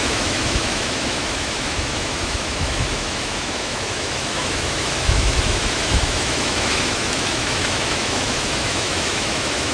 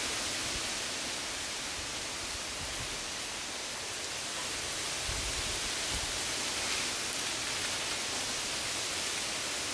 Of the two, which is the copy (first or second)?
first